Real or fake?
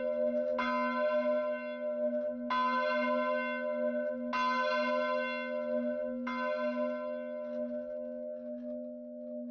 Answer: real